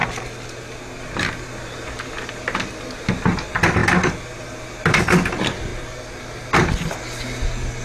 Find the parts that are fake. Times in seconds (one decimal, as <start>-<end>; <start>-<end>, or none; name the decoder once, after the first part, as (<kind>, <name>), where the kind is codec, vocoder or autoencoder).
none